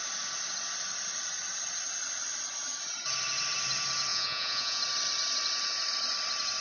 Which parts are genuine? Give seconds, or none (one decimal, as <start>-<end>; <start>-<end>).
0.0-4.1; 4.8-6.6